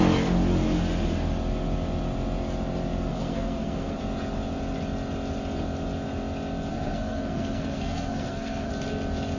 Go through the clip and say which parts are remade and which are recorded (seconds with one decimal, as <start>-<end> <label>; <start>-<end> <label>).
0.0-3.1 recorded; 3.1-4.0 remade; 4.0-6.7 recorded; 6.7-8.7 remade; 8.7-9.4 recorded